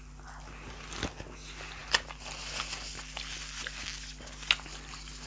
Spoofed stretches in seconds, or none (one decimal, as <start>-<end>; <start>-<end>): none